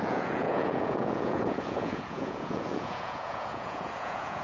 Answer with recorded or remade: remade